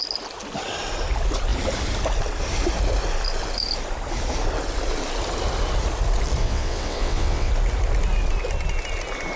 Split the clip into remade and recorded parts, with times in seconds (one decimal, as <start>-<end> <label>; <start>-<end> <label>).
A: 0.0-6.4 recorded; 6.4-7.5 remade; 7.5-9.4 recorded